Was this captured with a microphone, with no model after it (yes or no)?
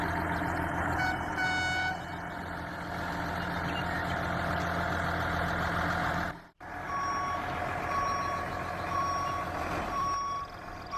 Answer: yes